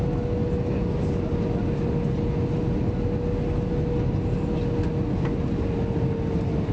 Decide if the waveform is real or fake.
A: real